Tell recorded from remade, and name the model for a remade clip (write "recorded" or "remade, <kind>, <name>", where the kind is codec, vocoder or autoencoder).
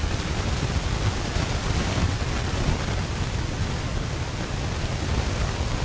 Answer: recorded